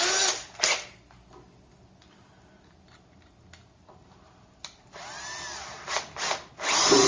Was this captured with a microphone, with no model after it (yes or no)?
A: yes